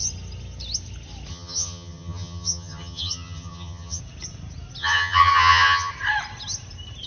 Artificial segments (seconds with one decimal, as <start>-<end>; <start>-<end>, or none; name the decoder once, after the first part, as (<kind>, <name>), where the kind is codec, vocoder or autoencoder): 1.3-4.0 (vocoder, HiFi-GAN); 4.8-5.9